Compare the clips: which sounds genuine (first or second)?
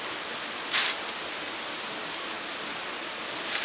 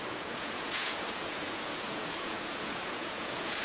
first